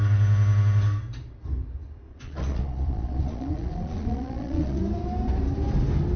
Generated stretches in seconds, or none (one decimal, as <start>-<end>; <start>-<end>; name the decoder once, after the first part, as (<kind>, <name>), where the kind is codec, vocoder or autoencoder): 2.1-4.8 (vocoder, Vocos)